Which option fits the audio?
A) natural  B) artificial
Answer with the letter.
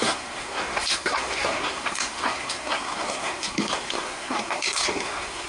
B